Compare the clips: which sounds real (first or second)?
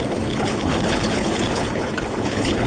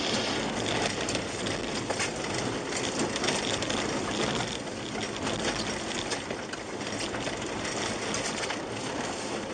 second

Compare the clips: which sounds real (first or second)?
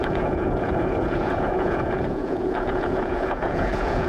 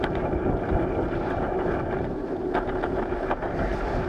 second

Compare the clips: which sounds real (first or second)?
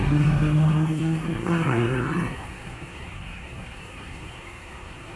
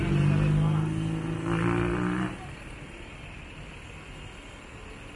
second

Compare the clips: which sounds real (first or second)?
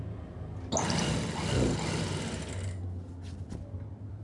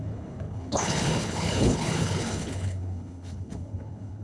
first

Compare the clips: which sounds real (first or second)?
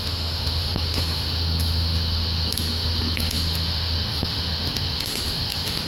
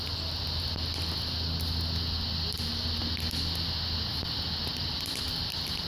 second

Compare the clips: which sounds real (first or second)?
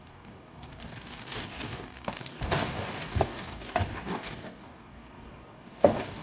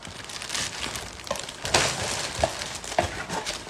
second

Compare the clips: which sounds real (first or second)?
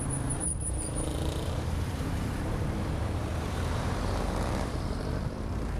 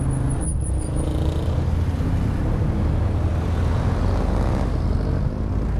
second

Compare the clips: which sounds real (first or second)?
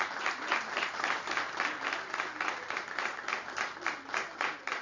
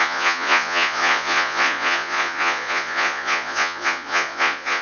first